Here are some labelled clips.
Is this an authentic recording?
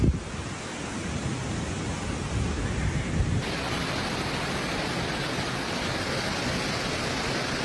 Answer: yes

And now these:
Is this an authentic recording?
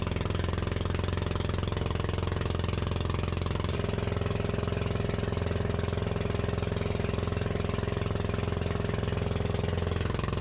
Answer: yes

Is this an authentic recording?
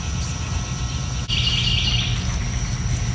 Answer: yes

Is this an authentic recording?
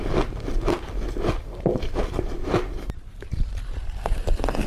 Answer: no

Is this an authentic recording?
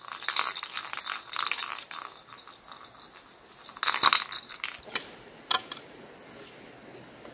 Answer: yes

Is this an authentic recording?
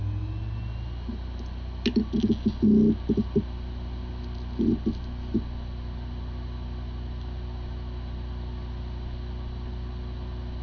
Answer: yes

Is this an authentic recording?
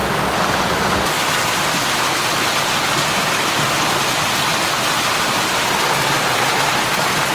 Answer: yes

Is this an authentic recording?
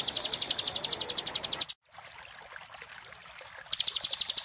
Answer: yes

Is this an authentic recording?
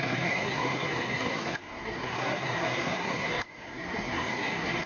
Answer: no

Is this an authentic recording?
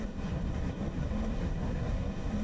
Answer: no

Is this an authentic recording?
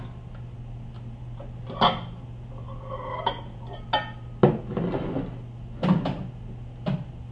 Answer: yes